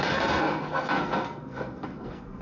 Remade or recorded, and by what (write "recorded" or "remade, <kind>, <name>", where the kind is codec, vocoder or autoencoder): remade, codec, SNAC